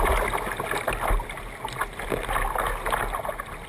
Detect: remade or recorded recorded